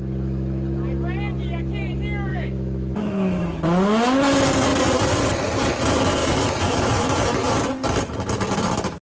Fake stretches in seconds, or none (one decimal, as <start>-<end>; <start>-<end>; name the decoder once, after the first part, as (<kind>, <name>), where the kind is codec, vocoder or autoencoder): 2.3-3.6 (autoencoder, DAC-VAE); 6.2-6.9